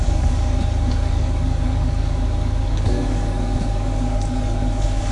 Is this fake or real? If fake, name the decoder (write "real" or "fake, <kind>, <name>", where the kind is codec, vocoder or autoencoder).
fake, codec, DAC